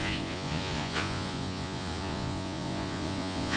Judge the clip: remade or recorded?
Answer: remade